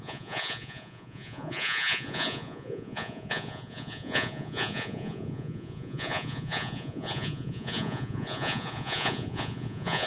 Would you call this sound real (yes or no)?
no